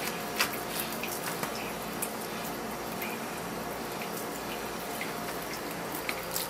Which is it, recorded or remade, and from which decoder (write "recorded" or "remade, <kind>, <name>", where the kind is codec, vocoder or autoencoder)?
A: remade, vocoder, BigVGAN v2